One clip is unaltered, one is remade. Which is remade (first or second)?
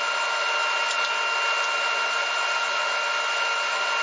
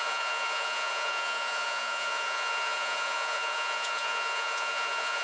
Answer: second